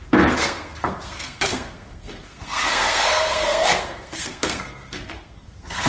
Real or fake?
fake